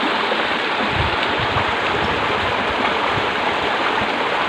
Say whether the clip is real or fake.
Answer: real